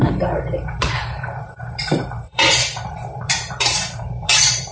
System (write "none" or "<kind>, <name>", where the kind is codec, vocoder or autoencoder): vocoder, BigVGAN v2